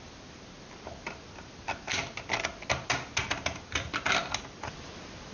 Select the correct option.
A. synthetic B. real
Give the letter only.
B